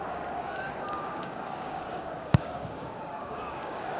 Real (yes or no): no